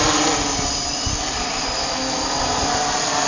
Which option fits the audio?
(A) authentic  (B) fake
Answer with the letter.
A